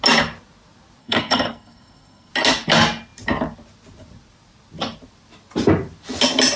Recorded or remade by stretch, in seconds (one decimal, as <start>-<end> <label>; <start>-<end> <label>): 0.0-1.0 recorded; 1.0-2.3 remade; 2.3-6.6 recorded